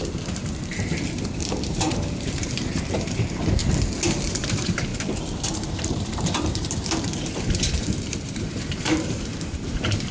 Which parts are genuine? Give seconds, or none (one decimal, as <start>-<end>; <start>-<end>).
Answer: 3.6-4.3; 4.9-5.4

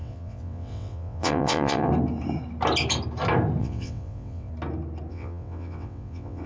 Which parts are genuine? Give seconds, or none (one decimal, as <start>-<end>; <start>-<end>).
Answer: 1.9-3.6; 4.5-5.1

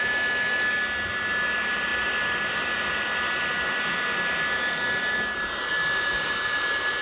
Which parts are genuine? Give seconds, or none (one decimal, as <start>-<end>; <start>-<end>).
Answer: 0.0-7.0

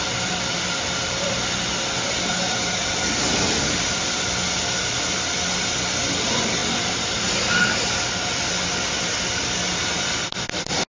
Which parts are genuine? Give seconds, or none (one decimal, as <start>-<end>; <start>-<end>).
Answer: 0.0-11.0

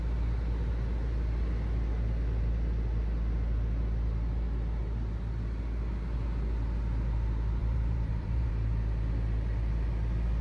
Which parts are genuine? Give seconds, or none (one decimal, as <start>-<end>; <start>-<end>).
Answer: 0.0-7.6; 8.5-10.4